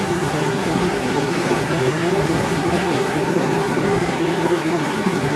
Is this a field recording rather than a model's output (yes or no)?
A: no